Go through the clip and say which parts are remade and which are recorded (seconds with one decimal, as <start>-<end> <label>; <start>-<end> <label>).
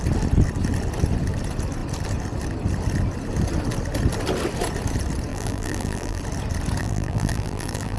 0.0-5.3 recorded; 5.3-6.2 remade; 6.2-6.8 recorded; 6.8-8.0 remade